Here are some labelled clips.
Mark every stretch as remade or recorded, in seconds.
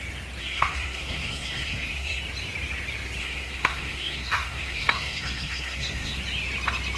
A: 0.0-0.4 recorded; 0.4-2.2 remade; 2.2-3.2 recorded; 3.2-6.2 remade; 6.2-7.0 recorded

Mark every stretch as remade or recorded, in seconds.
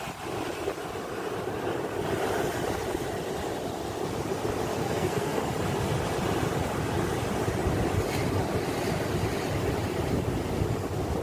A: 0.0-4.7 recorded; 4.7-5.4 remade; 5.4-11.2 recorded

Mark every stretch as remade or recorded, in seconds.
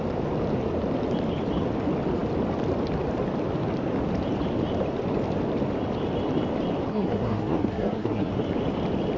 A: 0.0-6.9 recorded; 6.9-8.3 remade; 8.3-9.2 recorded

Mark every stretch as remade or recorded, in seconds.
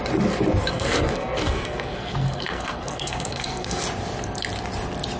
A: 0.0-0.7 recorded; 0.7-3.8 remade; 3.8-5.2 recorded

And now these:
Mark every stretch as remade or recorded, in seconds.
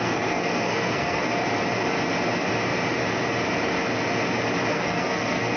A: 0.0-1.3 remade; 1.3-4.7 recorded; 4.7-5.6 remade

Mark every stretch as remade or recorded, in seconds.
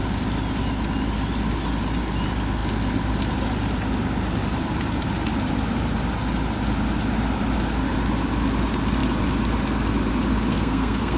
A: 0.0-10.5 recorded; 10.5-11.2 remade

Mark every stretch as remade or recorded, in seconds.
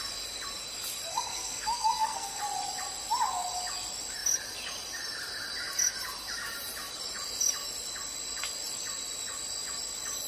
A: 0.0-1.1 recorded; 1.1-2.4 remade; 2.4-10.3 recorded